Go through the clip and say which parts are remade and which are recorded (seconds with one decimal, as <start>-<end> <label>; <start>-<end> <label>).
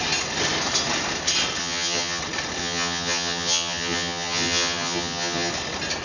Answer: 0.0-1.6 recorded; 1.6-2.2 remade; 2.2-2.6 recorded; 2.6-5.5 remade; 5.5-6.0 recorded